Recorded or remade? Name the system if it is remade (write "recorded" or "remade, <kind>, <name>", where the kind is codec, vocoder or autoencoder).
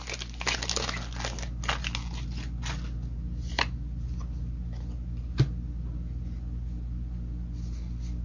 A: recorded